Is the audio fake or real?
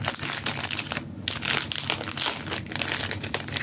real